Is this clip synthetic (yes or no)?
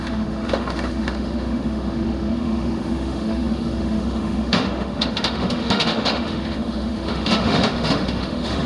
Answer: yes